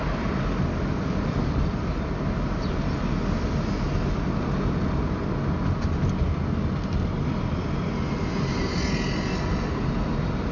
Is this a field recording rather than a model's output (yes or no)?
yes